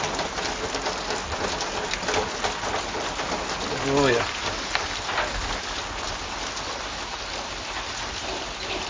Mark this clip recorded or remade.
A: recorded